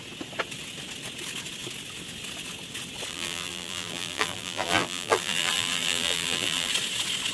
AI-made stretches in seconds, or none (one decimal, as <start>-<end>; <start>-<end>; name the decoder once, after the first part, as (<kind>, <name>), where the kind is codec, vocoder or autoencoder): 3.1-6.7 (vocoder, BigVGAN v2)